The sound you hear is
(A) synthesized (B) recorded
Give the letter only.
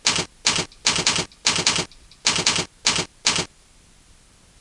B